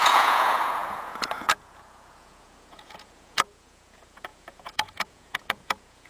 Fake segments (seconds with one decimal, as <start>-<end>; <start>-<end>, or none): 0.0-6.1

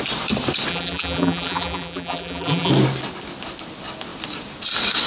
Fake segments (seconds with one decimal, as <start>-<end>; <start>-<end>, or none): 0.7-2.7

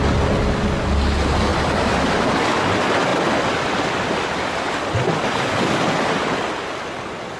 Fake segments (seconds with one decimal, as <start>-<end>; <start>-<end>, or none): 1.5-2.1; 3.1-5.4

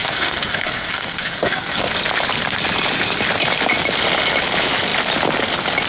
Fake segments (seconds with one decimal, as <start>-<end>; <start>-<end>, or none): 0.0-1.9

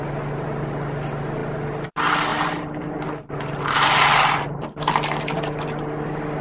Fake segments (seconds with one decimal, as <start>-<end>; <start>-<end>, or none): none

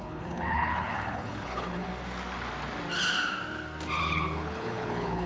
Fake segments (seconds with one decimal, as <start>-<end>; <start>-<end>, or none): 0.0-1.9; 4.0-5.3

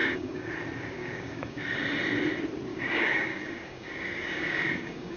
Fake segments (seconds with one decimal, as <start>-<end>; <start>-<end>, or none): 0.0-0.5; 1.0-1.6; 2.7-5.2